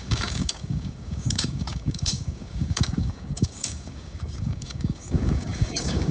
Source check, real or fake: fake